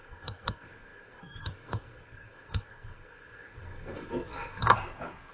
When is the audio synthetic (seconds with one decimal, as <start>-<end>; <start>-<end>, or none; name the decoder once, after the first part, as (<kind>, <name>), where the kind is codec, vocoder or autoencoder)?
0.0-4.6 (codec, SNAC)